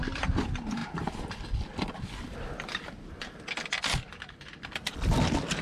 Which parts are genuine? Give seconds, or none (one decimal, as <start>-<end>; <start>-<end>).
0.0-5.6